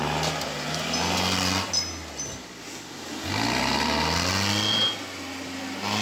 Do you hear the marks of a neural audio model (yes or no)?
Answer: no